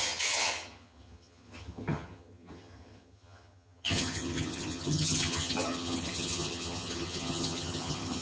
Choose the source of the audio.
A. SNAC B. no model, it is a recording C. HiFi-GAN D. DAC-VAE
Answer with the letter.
C